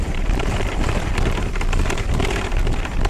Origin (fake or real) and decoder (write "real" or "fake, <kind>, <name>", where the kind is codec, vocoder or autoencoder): real